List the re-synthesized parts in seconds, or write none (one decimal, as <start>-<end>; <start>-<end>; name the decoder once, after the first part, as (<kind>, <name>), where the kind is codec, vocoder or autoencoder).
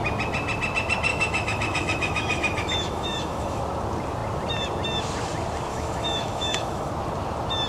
1.1-3.6 (autoencoder, DAC-VAE); 5.7-6.9